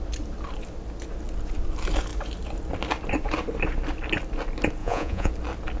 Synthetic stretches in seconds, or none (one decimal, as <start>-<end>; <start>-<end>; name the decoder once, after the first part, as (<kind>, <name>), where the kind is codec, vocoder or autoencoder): 4.8-5.3 (vocoder, Vocos)